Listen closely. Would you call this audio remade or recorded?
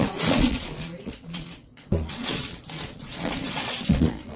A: remade